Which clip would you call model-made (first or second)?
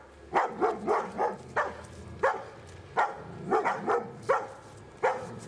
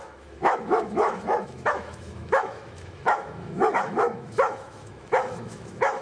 second